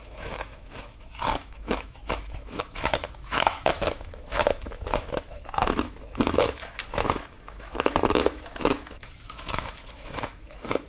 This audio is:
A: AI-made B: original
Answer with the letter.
A